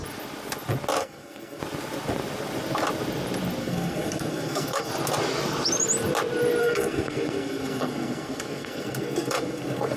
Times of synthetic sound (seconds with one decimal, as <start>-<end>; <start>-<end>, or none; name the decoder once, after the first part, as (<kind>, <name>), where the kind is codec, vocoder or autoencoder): 1.0-1.6 (codec, SNAC); 3.6-4.9; 6.6-10.0